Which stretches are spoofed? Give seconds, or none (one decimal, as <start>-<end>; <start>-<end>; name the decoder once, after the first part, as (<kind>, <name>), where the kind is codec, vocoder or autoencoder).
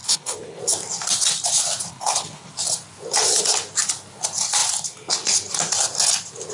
0.0-0.6 (codec, HILCodec); 1.9-2.5